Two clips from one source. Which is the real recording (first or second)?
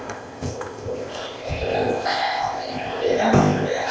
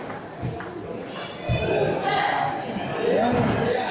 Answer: second